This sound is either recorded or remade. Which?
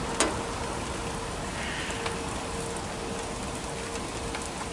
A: recorded